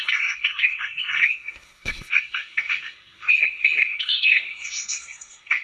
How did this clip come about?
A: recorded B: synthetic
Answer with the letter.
B